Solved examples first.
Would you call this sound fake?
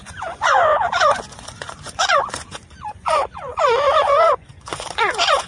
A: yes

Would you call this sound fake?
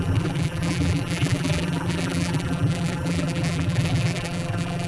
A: yes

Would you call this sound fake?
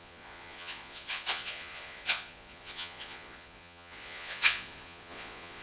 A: yes